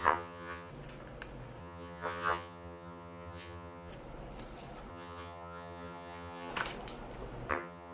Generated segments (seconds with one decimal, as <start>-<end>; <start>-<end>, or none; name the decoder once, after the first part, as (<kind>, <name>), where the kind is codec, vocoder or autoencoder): 0.0-0.7 (vocoder, HiFi-GAN); 1.6-3.9; 4.9-6.5; 7.5-7.9